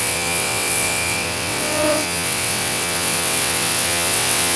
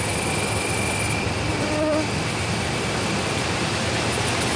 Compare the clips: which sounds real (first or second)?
second